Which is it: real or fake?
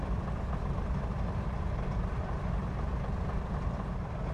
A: real